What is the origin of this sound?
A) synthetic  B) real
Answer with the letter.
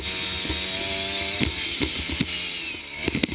B